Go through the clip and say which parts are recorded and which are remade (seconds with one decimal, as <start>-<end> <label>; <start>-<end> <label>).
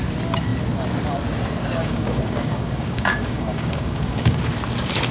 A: 0.0-1.8 recorded; 1.8-4.4 remade; 4.4-5.1 recorded